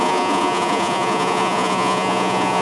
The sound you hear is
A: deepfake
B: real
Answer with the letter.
A